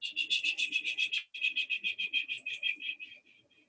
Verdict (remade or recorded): recorded